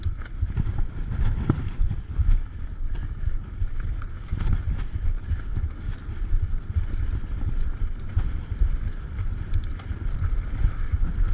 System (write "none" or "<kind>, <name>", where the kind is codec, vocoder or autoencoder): none